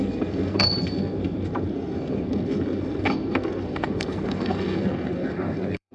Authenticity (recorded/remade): remade